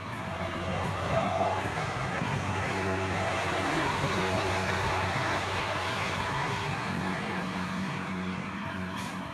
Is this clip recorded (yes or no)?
no